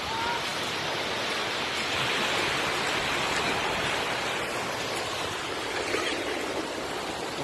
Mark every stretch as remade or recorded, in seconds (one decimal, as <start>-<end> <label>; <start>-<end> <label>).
0.0-7.4 recorded